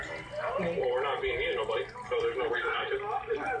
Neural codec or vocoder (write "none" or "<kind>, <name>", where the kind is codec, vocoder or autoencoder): none